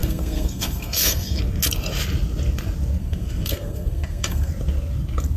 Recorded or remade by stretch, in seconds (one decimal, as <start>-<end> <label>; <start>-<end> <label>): 0.0-1.4 remade; 1.4-3.0 recorded; 3.0-4.5 remade; 4.5-5.4 recorded